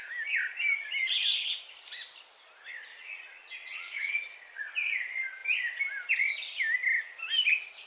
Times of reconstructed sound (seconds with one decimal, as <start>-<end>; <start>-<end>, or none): 2.9-4.6